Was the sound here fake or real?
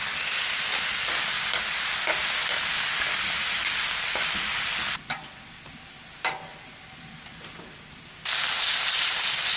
real